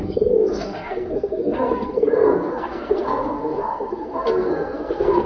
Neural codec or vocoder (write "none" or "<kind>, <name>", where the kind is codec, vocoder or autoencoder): codec, SNAC